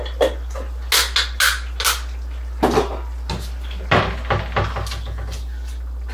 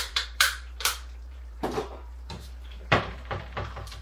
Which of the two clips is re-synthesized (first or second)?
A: second